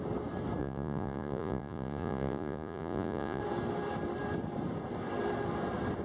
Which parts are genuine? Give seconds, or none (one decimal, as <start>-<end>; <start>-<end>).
0.0-0.6; 3.4-6.0